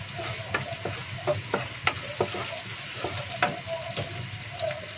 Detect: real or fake real